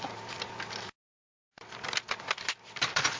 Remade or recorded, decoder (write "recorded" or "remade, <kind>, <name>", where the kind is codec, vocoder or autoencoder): recorded